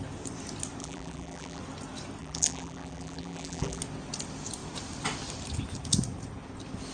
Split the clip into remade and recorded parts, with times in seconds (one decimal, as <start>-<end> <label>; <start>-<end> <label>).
0.0-0.8 recorded; 0.8-1.6 remade; 1.6-2.2 recorded; 2.2-3.8 remade; 3.8-6.9 recorded